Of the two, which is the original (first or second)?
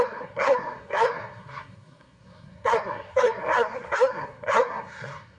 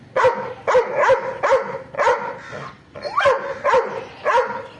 second